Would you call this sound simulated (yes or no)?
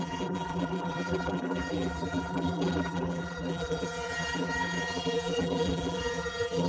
yes